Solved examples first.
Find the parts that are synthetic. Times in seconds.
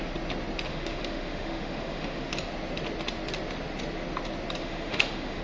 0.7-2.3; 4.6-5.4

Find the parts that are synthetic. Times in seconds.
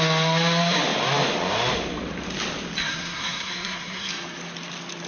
2.8-4.1